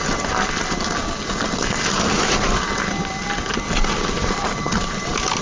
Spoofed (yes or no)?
no